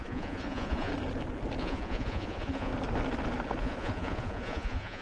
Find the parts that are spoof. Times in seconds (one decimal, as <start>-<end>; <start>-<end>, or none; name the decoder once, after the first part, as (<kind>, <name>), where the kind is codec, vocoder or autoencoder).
0.0-0.9 (vocoder, Vocos); 1.6-2.7; 3.6-5.0